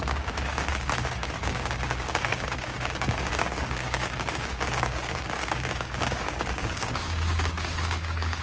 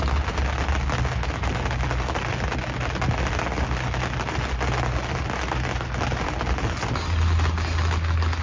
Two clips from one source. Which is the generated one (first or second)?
first